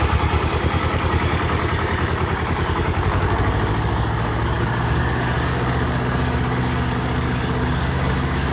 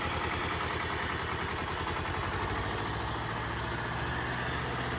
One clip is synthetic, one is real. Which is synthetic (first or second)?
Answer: first